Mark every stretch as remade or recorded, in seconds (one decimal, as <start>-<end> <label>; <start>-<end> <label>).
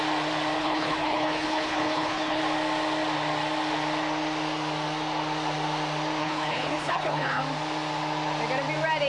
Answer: 0.0-0.6 recorded; 0.6-2.4 remade; 2.4-6.2 recorded; 6.2-7.4 remade; 7.4-9.1 recorded